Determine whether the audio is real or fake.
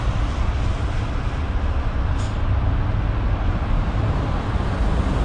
real